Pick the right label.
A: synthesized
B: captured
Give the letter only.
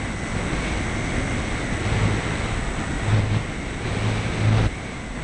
B